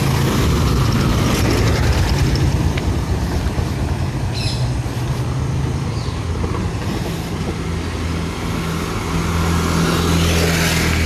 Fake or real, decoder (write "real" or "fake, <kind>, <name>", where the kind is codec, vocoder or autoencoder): real